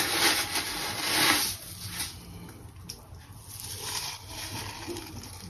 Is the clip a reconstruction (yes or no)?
no